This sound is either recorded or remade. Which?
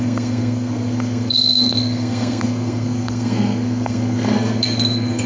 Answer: remade